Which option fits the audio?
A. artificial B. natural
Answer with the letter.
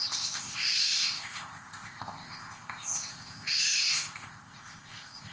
A